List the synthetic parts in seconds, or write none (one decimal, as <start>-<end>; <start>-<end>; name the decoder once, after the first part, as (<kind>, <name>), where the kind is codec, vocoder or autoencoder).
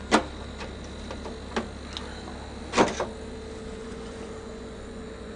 3.8-5.4 (vocoder, Vocos)